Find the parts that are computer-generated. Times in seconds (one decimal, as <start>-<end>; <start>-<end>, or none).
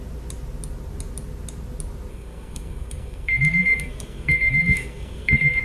2.1-5.6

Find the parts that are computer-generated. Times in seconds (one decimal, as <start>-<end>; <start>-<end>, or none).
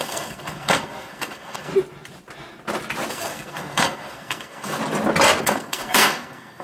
0.0-1.7; 3.1-4.8; 5.4-6.6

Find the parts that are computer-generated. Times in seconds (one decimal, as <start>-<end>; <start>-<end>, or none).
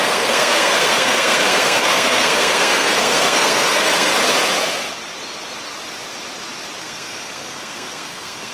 0.0-4.1; 6.8-8.5